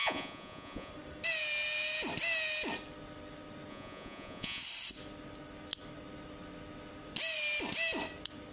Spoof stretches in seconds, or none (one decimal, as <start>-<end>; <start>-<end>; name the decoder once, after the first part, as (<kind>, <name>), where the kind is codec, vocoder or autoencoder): 0.0-0.9 (vocoder, Vocos); 3.7-4.6